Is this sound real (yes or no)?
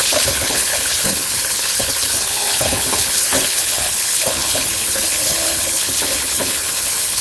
no